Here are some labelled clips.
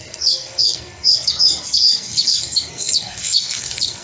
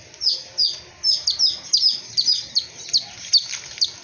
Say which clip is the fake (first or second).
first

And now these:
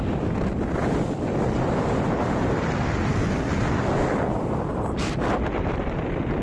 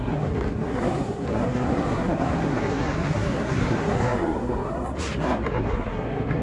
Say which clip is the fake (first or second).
second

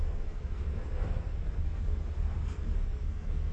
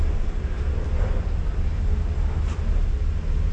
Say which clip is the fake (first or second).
first